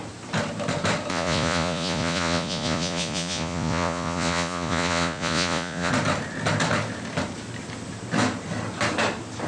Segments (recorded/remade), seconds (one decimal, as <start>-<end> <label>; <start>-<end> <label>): 0.0-1.1 recorded; 1.1-5.9 remade; 5.9-9.5 recorded